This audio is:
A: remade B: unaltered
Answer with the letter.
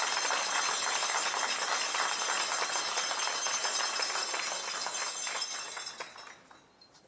B